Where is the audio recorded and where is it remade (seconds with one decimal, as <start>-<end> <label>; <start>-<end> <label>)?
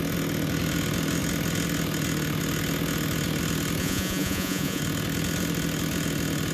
0.0-3.8 recorded; 3.8-4.8 remade; 4.8-6.5 recorded